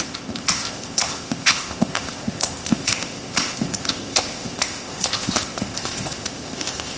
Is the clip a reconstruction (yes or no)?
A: yes